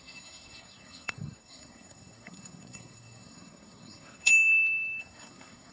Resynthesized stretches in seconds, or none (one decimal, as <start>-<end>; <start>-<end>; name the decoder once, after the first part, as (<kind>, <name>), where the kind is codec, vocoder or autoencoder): 0.0-4.3 (codec, SNAC); 5.0-5.7